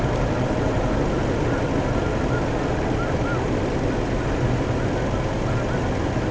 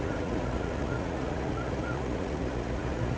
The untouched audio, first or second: first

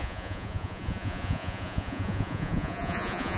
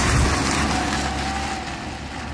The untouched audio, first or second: second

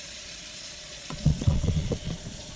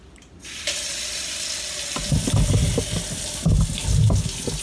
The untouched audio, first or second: second